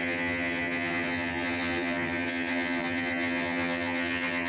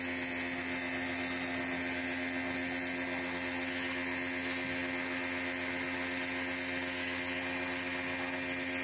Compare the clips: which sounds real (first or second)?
second